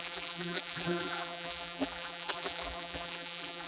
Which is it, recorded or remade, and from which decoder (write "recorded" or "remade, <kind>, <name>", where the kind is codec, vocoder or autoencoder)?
remade, vocoder, BigVGAN v2